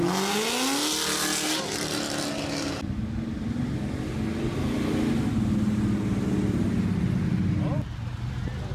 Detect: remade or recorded recorded